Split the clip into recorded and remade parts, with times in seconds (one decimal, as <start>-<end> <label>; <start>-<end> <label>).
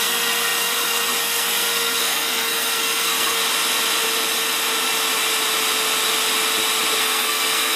0.0-3.4 remade; 3.4-7.0 recorded; 7.0-7.8 remade